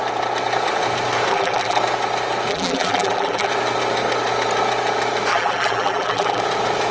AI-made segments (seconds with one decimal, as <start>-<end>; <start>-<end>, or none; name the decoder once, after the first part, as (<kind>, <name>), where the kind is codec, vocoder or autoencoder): 1.3-1.8 (vocoder, BigVGAN v2); 2.5-3.5; 5.3-6.4